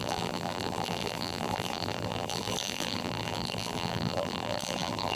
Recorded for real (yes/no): no